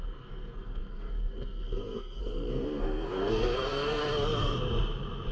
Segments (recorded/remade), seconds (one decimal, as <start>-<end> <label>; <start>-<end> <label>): 0.0-4.0 remade; 4.0-5.3 recorded